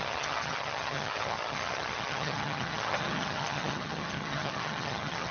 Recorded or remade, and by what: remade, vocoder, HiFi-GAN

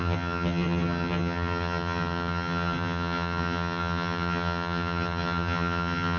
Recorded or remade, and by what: remade, vocoder, HiFi-GAN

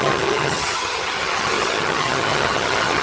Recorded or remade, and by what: remade, vocoder, HiFi-GAN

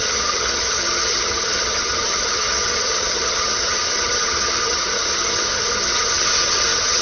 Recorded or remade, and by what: remade, vocoder, HiFi-GAN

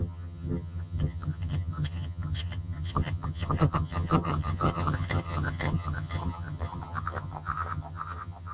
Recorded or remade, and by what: remade, vocoder, HiFi-GAN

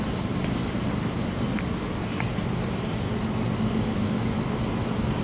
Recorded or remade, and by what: recorded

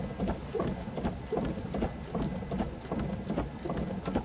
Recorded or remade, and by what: recorded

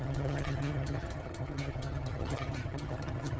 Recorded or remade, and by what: remade, vocoder, HiFi-GAN